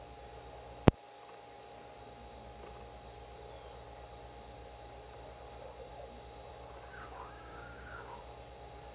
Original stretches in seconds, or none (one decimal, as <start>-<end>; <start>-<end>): 0.0-6.9; 8.2-8.9